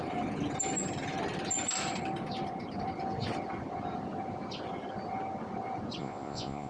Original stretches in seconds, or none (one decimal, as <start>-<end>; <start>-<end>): 0.0-6.0

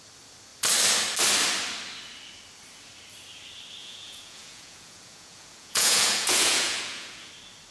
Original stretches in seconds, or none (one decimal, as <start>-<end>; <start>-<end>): 0.0-3.8; 7.3-7.7

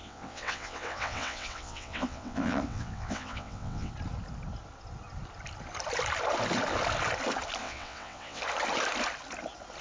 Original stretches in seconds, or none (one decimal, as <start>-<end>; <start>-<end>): 3.9-7.6; 8.4-9.8

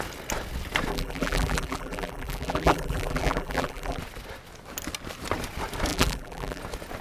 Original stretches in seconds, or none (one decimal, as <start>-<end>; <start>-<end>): 0.0-0.9; 4.0-5.9; 6.6-7.0

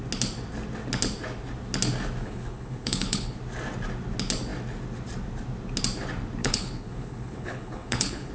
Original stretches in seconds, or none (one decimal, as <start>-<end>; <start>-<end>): 0.0-2.2; 3.4-6.4